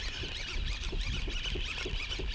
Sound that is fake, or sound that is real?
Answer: real